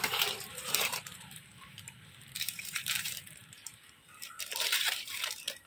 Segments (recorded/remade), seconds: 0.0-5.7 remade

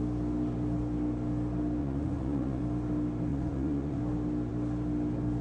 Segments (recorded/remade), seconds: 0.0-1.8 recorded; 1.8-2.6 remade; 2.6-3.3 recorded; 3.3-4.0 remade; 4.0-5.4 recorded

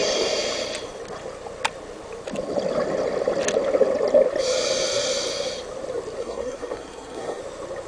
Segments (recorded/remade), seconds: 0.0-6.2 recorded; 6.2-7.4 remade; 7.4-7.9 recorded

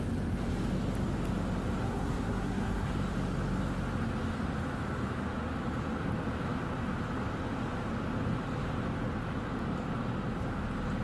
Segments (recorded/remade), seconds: 0.0-1.8 recorded; 1.8-2.9 remade; 2.9-11.0 recorded